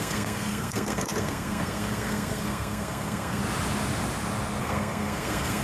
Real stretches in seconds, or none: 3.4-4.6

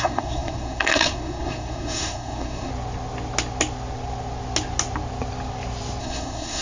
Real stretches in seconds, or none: 2.7-6.0

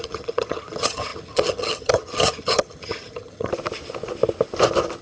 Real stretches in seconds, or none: 3.5-5.0

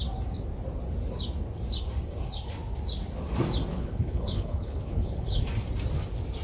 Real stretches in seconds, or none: 0.0-3.7; 5.4-6.4

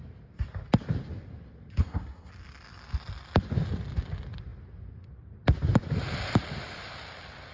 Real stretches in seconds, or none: 0.0-1.8; 2.3-7.5

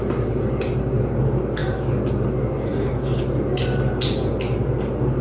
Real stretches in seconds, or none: 0.0-5.2